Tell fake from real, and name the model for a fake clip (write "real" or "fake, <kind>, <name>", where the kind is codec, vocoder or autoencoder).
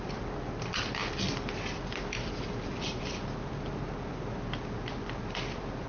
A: real